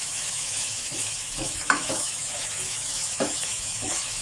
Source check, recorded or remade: remade